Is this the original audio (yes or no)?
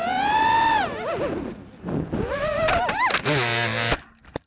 yes